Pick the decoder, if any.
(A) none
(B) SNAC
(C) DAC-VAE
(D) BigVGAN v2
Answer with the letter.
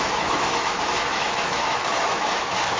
C